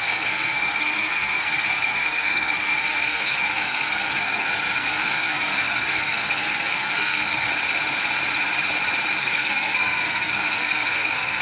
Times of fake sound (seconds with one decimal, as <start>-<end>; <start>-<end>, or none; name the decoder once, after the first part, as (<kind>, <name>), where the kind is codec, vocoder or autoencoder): 0.0-7.5 (codec, SNAC); 9.2-11.4